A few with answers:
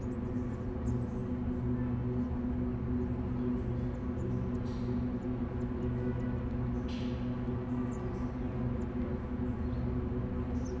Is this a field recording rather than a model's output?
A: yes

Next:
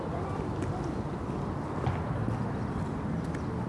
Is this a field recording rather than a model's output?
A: yes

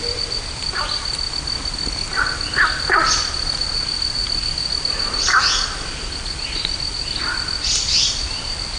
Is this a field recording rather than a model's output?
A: yes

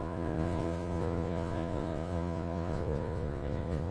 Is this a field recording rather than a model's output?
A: no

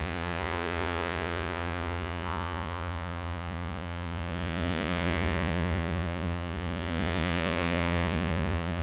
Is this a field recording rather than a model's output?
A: no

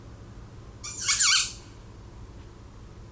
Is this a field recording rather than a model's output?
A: yes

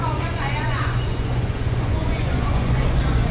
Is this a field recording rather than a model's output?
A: no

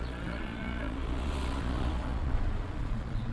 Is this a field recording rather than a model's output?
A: no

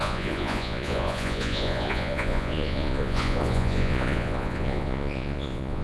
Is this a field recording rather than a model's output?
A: no